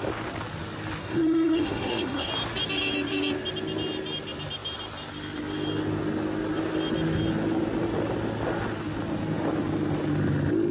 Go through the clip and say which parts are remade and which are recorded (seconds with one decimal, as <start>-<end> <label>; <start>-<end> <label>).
0.0-1.0 recorded; 1.0-2.3 remade; 2.3-10.7 recorded